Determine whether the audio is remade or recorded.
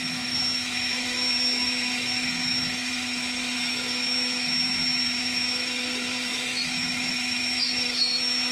remade